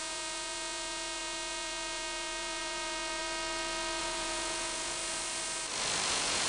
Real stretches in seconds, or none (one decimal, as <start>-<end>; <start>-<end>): 3.2-4.0; 5.0-6.1